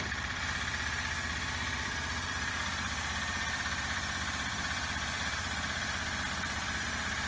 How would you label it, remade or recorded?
remade